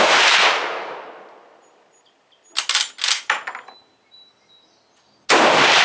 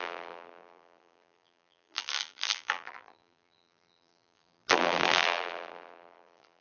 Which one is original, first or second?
first